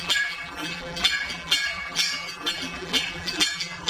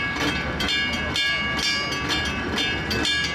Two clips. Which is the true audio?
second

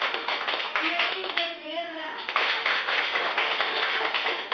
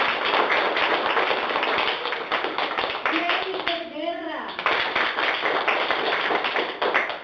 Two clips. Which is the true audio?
second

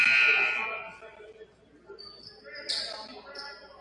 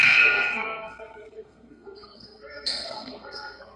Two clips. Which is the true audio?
first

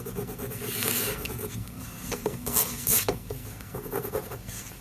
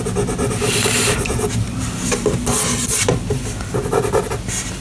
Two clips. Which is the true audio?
second